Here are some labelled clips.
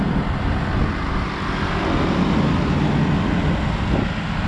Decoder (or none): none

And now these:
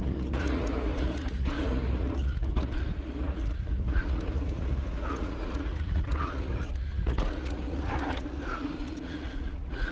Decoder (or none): vocoder, Vocos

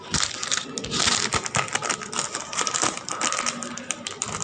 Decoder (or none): none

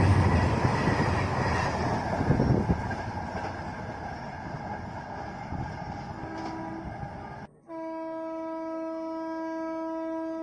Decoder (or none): none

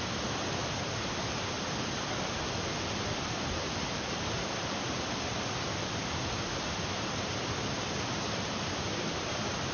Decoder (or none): vocoder, BigVGAN v2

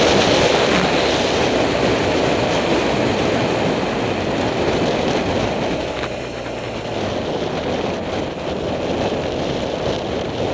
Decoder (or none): none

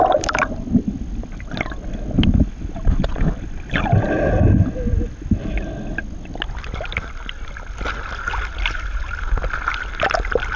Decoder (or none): none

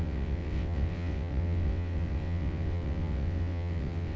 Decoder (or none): vocoder, WaveNeXt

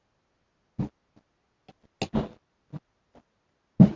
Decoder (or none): none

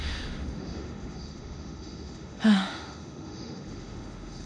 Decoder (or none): autoencoder, DAC-VAE